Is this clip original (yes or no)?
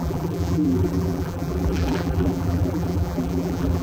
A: no